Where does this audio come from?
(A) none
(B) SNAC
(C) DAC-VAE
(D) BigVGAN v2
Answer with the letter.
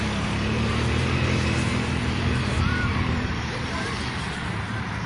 D